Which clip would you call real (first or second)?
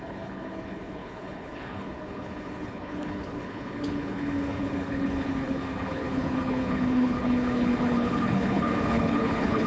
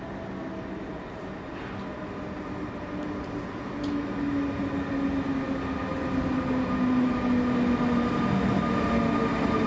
second